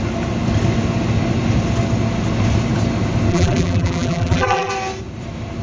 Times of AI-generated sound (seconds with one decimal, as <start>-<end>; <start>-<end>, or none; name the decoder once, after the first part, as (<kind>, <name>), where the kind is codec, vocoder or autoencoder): 3.3-4.7 (vocoder, BigVGAN v2)